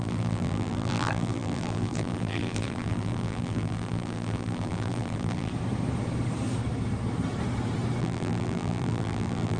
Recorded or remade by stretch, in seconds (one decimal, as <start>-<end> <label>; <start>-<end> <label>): 0.0-5.5 remade; 5.5-8.0 recorded; 8.0-9.6 remade